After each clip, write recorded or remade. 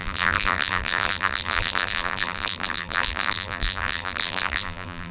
remade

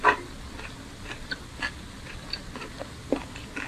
remade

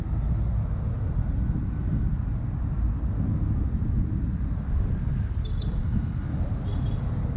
recorded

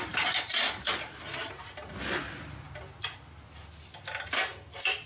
recorded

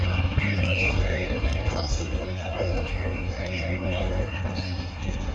remade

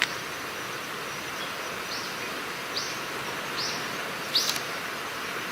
recorded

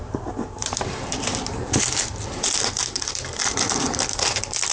remade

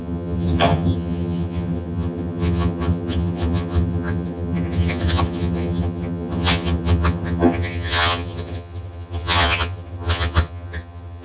remade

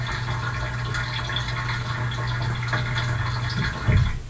recorded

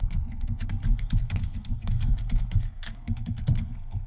remade